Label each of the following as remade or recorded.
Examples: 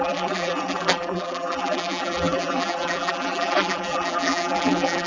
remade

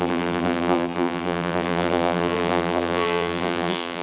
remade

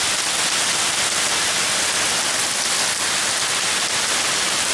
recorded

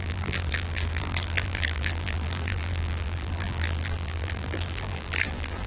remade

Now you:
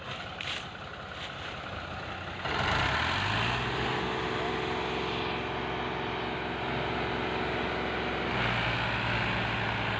recorded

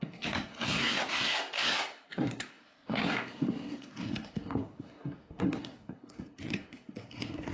remade